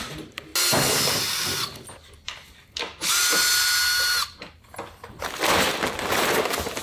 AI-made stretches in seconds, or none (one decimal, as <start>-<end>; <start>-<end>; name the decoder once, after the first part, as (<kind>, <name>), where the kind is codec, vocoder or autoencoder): none